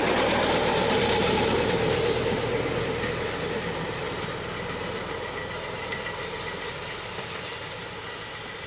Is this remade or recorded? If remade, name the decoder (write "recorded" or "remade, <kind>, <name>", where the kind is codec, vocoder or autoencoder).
recorded